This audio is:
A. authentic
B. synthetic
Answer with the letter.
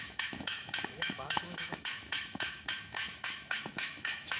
B